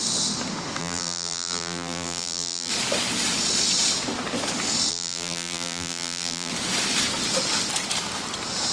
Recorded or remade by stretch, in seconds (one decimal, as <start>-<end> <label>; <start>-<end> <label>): 0.0-0.8 recorded; 0.8-2.7 remade; 2.7-4.9 recorded; 4.9-6.5 remade; 6.5-8.7 recorded

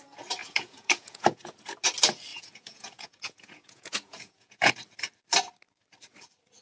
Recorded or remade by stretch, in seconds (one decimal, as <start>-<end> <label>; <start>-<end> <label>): 0.0-0.4 recorded; 0.4-1.5 remade; 1.5-2.3 recorded; 2.3-4.7 remade; 4.7-6.6 recorded